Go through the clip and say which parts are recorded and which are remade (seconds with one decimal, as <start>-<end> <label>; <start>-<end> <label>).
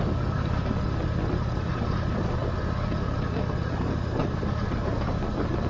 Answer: 0.0-1.7 recorded; 1.7-2.2 remade; 2.2-4.2 recorded; 4.2-5.1 remade; 5.1-5.7 recorded